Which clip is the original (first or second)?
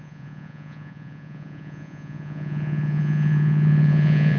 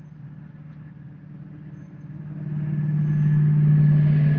second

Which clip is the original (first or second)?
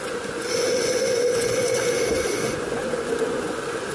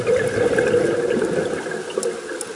second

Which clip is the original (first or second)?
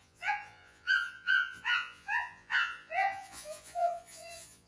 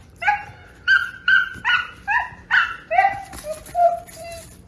second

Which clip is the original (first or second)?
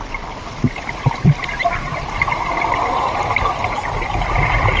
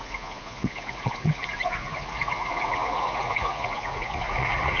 first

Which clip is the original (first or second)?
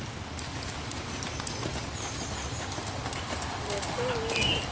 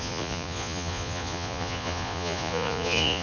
first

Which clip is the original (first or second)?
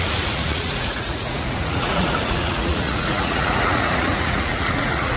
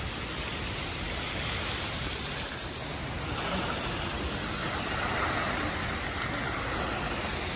second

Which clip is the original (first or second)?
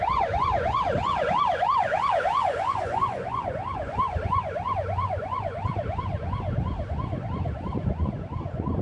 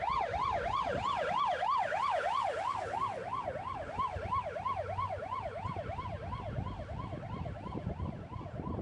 second